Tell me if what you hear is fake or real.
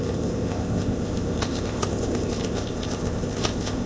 fake